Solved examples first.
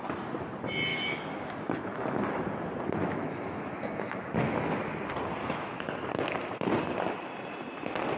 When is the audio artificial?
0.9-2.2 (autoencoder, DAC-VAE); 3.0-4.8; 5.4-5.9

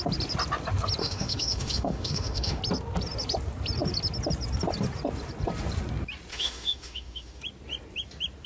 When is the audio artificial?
1.0-2.6 (autoencoder, DAC-VAE); 6.3-7.4

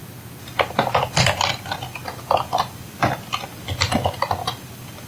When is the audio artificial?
none

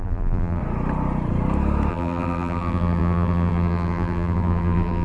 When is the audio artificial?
0.0-0.6 (vocoder, BigVGAN v2); 1.9-5.0